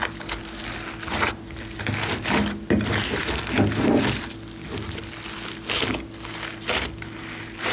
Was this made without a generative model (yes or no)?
yes